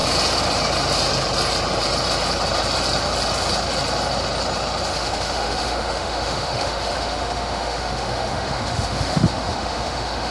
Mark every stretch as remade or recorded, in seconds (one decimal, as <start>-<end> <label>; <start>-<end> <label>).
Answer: 0.0-4.9 recorded; 4.9-10.3 remade